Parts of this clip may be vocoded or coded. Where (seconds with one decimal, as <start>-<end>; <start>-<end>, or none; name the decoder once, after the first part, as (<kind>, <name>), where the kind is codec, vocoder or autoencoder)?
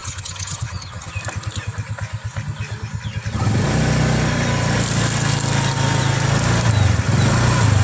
0.0-1.1 (vocoder, HiFi-GAN)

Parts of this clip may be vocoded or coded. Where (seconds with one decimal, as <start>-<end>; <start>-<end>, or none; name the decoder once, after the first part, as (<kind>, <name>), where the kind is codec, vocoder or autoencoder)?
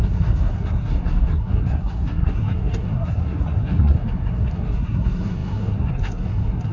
0.0-6.7 (codec, SNAC)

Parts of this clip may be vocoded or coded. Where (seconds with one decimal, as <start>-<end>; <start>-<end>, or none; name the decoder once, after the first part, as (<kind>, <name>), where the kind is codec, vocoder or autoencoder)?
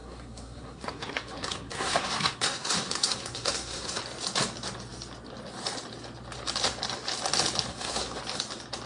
0.0-4.0 (codec, SNAC); 7.7-8.2